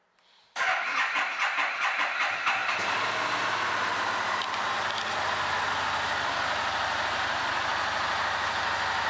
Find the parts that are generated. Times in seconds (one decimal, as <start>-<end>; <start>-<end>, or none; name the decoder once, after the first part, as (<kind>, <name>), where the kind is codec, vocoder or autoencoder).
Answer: none